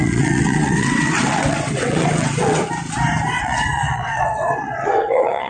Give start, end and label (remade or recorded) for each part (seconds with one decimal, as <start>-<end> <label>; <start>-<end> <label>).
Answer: 0.0-2.6 remade; 2.6-3.4 recorded; 3.4-5.5 remade